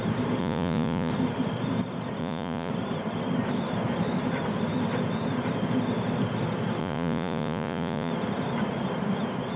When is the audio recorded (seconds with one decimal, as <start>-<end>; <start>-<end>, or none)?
0.0-0.4; 1.1-2.2; 2.7-6.8; 8.1-9.6